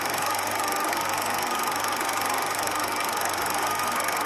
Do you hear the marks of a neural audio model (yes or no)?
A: yes